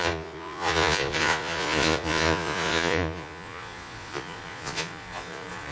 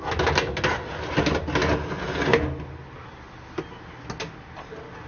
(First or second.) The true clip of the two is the second